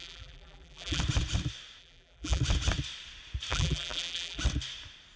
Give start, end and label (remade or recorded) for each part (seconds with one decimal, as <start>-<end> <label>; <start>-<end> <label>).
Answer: 0.0-1.0 remade; 1.0-1.8 recorded; 1.8-2.4 remade; 2.4-3.5 recorded; 3.5-4.4 remade; 4.4-5.2 recorded